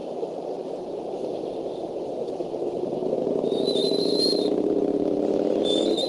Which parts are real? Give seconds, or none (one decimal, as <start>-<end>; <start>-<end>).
3.1-6.1